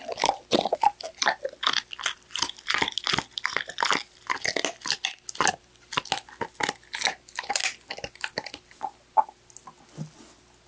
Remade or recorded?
recorded